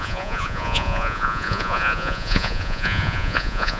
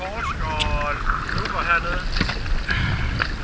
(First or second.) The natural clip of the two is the second